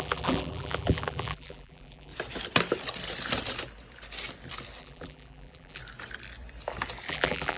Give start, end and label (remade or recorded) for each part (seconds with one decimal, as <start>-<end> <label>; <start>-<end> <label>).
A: 0.0-2.1 remade; 2.1-4.8 recorded; 4.8-5.8 remade; 5.8-7.1 recorded; 7.1-7.6 remade